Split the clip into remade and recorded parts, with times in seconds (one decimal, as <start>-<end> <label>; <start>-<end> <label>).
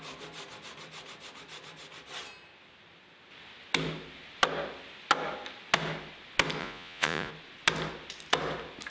0.0-6.6 recorded; 6.6-7.3 remade; 7.3-8.9 recorded